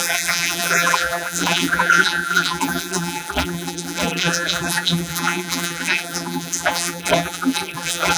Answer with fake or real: fake